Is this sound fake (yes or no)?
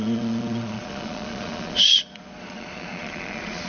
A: yes